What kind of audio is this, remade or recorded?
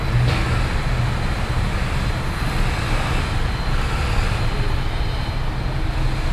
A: recorded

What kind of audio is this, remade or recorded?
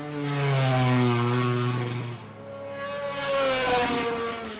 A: recorded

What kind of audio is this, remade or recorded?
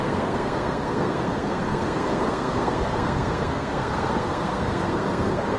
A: remade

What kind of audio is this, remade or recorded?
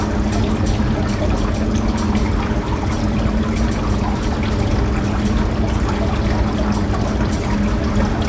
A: recorded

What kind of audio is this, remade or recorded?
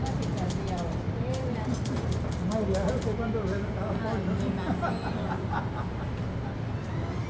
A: recorded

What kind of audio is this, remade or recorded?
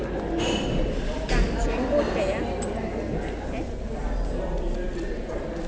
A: recorded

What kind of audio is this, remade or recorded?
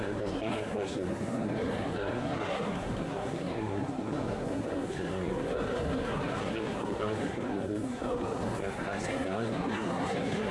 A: remade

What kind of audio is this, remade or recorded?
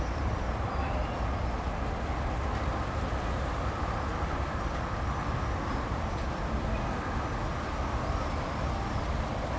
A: recorded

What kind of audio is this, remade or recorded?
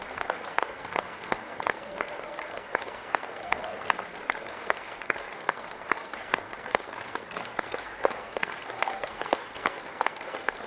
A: remade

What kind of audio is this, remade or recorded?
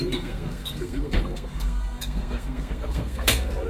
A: remade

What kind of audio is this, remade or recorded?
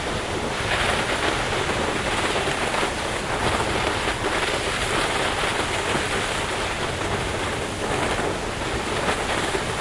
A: recorded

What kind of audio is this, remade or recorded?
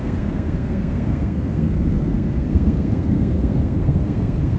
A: remade